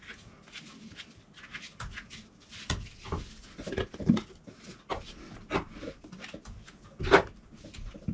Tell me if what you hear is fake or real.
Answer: real